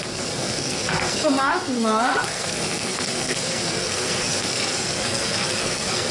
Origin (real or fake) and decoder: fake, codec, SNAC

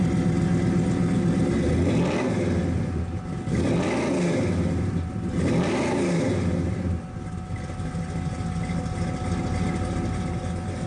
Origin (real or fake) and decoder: real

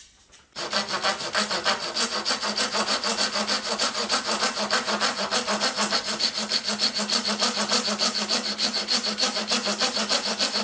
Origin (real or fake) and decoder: real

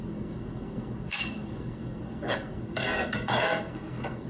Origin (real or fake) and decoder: fake, codec, SNAC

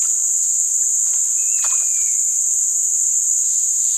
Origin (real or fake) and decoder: real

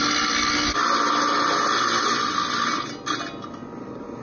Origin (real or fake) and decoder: real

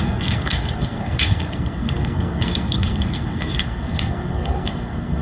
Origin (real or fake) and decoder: fake, codec, SNAC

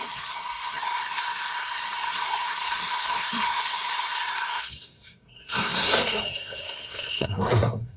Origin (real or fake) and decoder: fake, codec, SNAC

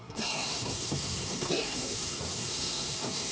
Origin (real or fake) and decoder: fake, codec, SNAC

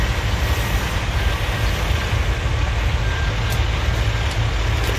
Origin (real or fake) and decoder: real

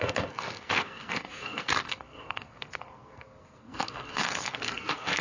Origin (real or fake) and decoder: fake, codec, SNAC